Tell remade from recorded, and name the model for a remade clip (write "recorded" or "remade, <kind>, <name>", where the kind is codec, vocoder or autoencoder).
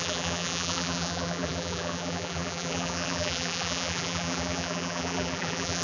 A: remade, vocoder, BigVGAN v2